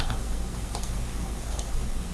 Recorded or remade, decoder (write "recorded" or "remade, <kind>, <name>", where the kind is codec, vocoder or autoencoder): remade, codec, SNAC